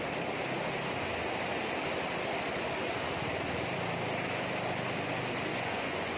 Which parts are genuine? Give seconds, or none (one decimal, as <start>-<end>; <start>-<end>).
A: 0.0-5.5